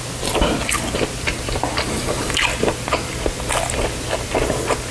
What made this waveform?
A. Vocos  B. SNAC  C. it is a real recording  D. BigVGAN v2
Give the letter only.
C